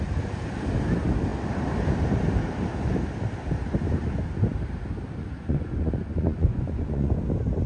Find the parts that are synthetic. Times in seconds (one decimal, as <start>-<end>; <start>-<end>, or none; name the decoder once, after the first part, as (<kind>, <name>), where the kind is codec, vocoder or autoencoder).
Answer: 5.2-7.1 (vocoder, Vocos)